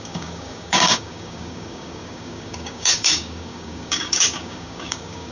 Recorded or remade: remade